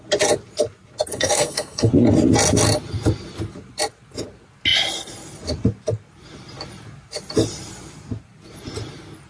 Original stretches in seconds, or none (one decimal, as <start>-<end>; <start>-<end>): 0.0-1.1; 1.9-9.3